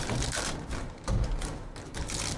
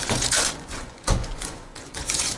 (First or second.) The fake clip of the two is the second